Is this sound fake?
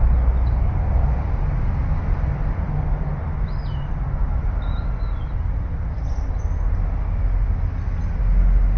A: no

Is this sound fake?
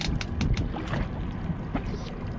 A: no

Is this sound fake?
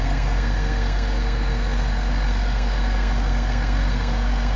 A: yes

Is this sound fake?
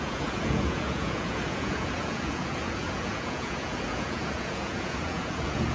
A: yes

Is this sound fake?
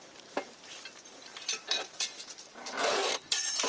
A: yes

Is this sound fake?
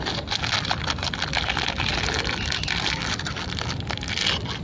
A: no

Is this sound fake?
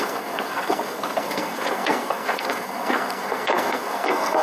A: yes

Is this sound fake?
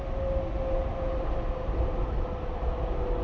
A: no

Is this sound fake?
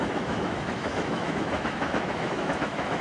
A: yes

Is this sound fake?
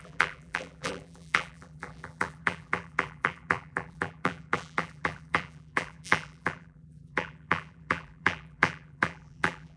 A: yes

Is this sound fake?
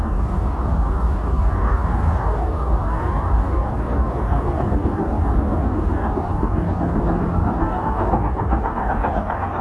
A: yes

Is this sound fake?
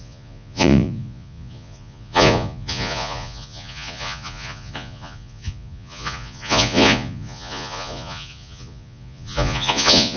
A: yes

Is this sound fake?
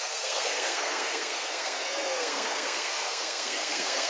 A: yes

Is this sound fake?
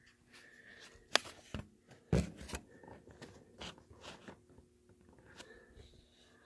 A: no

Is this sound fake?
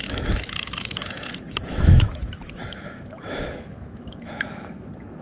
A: yes